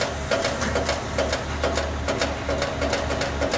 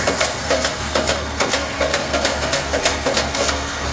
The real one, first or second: first